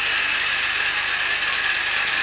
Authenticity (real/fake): fake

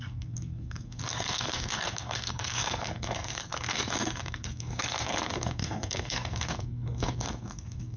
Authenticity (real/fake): fake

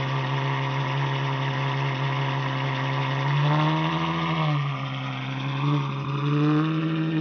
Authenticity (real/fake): real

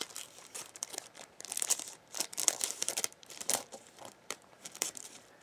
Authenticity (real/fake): fake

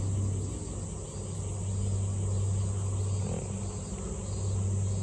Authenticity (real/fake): real